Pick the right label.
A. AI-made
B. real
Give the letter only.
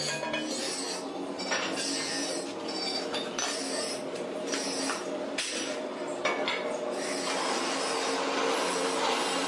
B